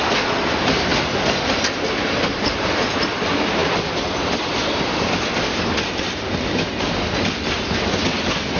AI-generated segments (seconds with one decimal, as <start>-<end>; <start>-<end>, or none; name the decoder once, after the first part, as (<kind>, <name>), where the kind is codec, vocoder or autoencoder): none